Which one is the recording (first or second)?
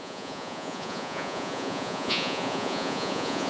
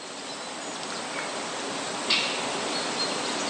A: second